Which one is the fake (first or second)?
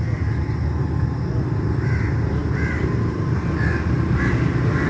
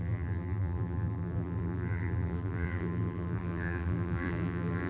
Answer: second